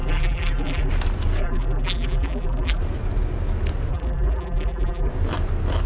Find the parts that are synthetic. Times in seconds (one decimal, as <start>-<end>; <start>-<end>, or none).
0.0-0.9; 1.4-2.8; 3.9-5.1